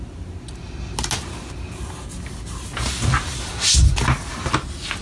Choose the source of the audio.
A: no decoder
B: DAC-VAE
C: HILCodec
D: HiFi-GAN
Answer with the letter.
A